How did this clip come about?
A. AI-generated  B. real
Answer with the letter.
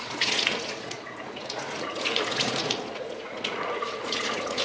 A